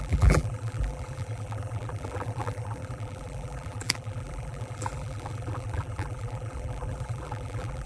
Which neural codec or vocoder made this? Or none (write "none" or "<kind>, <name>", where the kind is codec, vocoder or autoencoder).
vocoder, BigVGAN v2